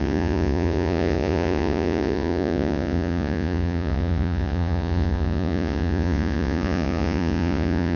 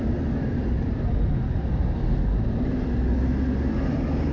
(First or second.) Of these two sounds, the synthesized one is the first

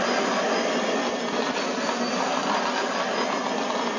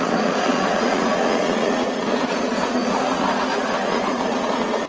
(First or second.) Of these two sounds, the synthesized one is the second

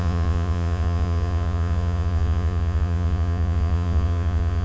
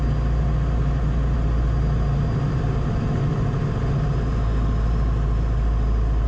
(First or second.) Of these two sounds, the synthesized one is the first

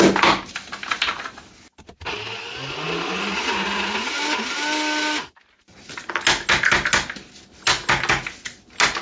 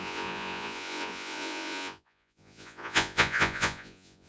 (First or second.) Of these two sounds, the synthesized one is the second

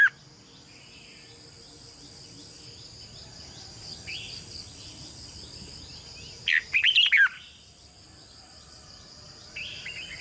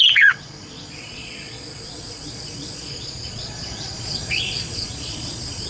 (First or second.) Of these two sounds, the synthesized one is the second